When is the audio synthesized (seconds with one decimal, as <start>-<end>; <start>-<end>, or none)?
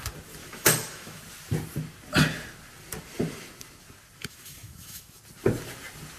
0.4-1.2; 4.2-5.2